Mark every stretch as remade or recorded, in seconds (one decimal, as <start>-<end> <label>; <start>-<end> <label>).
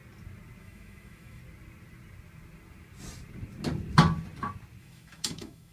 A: 0.0-0.6 recorded; 0.6-1.4 remade; 1.4-4.8 recorded; 4.8-5.7 remade